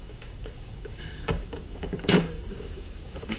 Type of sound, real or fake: fake